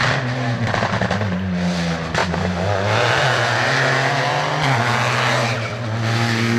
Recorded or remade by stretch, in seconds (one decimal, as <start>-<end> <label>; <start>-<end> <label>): 0.0-6.6 recorded